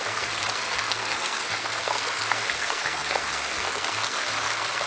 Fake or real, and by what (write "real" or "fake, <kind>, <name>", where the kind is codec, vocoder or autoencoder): fake, codec, SNAC